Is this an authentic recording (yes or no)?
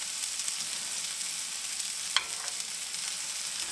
yes